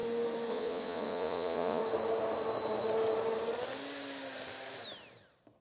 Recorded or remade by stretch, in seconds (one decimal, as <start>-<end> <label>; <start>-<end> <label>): 0.0-0.5 recorded; 0.5-1.8 remade; 1.8-5.6 recorded